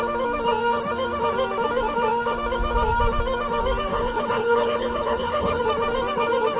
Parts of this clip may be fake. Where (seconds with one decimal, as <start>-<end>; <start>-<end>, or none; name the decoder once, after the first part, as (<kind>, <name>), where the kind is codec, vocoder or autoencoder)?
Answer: 3.9-5.6 (codec, HILCodec)